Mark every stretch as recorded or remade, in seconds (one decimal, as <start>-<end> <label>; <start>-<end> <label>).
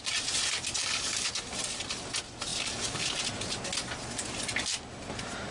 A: 0.0-0.8 recorded; 0.8-1.3 remade; 1.3-5.5 recorded